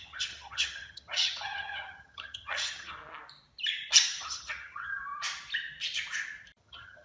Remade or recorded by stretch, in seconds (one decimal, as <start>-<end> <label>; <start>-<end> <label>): 0.0-3.0 remade; 3.0-4.1 recorded; 4.1-5.0 remade; 5.0-6.6 recorded; 6.6-7.0 remade